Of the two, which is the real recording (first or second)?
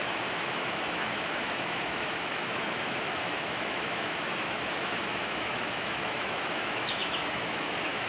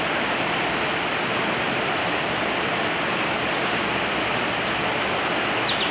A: second